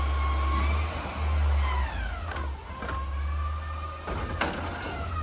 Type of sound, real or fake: real